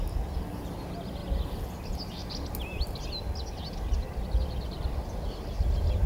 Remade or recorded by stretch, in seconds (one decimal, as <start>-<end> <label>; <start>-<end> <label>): 0.0-6.1 recorded